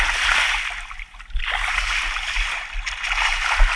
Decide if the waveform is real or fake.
real